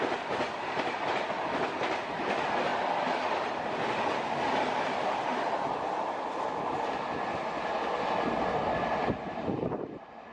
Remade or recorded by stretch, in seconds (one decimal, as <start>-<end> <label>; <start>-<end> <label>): 0.0-10.3 recorded